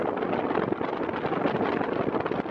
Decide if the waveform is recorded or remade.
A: recorded